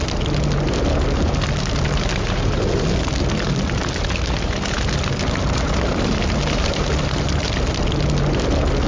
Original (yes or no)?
yes